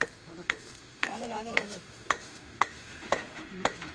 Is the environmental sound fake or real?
fake